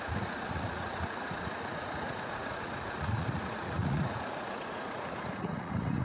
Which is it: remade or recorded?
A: remade